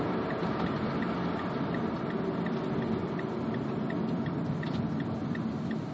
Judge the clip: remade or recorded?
recorded